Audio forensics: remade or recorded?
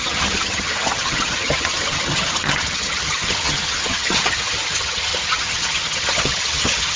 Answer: remade